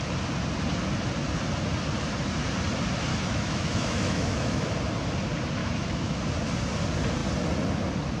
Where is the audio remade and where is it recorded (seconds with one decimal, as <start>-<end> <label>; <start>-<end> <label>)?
0.0-3.1 recorded; 3.1-4.7 remade; 4.7-5.6 recorded; 5.6-6.2 remade; 6.2-8.2 recorded